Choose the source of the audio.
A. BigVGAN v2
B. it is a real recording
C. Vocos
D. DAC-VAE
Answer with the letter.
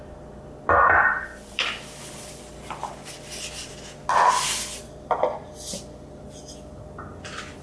B